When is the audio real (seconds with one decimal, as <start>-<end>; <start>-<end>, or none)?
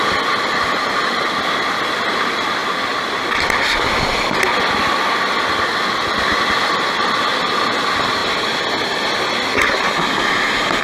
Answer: 0.0-10.8